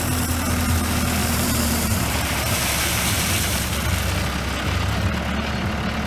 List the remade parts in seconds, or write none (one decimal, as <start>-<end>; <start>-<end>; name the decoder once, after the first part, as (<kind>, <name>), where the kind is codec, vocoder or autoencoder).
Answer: 1.2-3.8 (vocoder, BigVGAN v2)